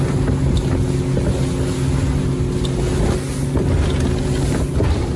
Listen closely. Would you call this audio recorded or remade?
recorded